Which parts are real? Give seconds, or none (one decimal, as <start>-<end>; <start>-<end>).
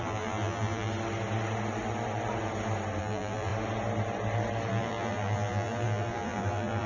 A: 0.9-3.0; 3.5-4.7